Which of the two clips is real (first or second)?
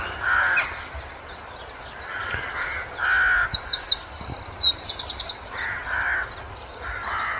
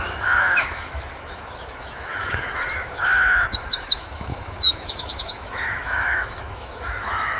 first